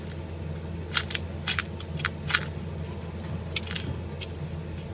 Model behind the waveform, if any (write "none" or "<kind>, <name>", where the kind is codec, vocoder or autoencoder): none